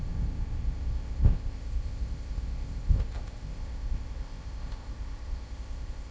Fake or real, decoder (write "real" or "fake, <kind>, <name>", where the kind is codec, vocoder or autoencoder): fake, codec, ZipCodec